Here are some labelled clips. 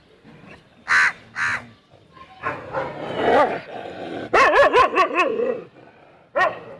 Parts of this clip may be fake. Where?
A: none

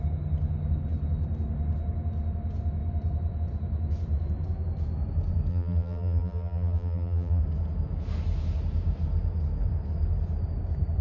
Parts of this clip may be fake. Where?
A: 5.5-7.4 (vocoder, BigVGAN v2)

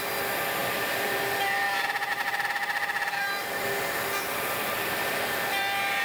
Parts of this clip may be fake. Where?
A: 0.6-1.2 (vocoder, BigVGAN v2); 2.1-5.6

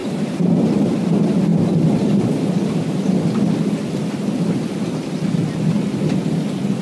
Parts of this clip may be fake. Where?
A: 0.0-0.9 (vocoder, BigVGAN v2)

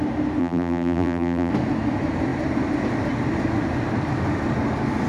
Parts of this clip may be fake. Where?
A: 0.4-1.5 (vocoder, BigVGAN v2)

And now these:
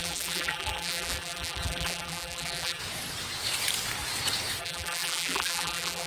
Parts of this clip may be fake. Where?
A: 0.0-2.8 (vocoder, BigVGAN v2); 4.6-6.1